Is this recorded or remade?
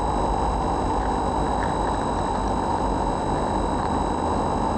recorded